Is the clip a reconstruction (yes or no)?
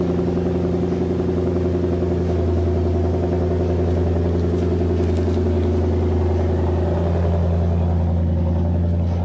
no